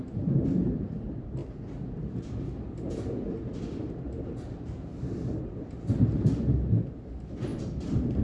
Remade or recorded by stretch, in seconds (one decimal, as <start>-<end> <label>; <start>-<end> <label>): 0.0-1.4 remade; 1.4-4.0 recorded; 4.0-4.9 remade; 4.9-6.3 recorded; 6.3-8.2 remade